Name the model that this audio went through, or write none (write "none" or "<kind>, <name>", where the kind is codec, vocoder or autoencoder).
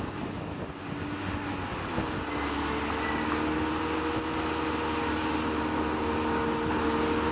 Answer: none